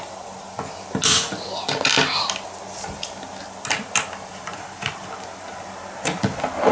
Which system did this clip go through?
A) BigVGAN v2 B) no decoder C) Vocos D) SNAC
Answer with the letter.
B